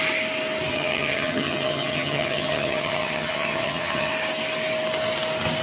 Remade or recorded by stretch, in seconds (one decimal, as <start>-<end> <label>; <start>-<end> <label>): 0.0-0.7 recorded; 0.7-4.1 remade; 4.1-5.6 recorded